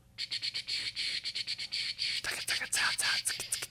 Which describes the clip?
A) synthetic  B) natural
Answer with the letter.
B